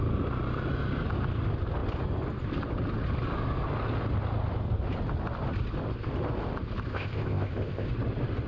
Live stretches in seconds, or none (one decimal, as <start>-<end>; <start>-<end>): 0.0-6.9; 7.9-8.5